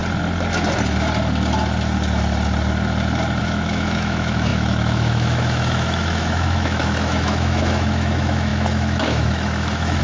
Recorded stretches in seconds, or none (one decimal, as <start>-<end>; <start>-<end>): 0.0-3.4